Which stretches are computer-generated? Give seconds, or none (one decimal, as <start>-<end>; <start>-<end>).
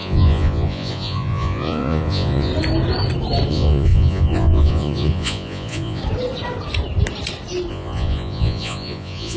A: 0.0-2.5; 3.5-6.0; 7.7-9.4